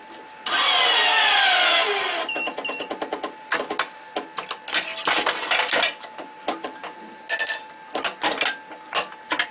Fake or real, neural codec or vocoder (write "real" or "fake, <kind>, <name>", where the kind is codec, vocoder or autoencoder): real